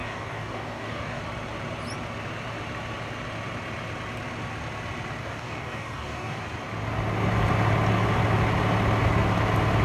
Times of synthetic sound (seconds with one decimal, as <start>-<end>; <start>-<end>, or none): 0.0-1.2; 5.2-6.4